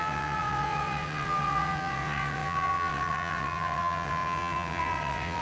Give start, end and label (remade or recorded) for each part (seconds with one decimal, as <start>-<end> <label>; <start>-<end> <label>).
0.0-5.4 remade